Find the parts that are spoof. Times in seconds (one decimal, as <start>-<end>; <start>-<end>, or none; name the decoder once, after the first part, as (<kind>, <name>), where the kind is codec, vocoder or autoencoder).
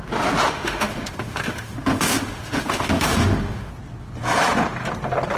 0.5-3.7 (autoencoder, DAC-VAE)